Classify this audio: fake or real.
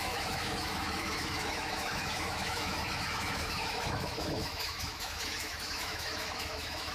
fake